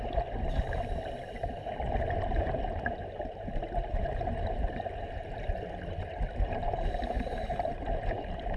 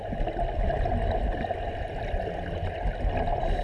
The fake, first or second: first